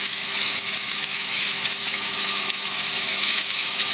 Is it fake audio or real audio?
fake